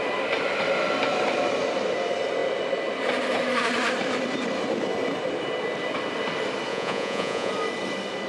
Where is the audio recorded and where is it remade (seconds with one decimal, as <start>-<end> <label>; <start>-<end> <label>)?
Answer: 0.0-6.7 recorded; 6.7-7.5 remade; 7.5-8.3 recorded